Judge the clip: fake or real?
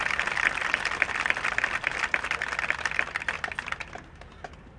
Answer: real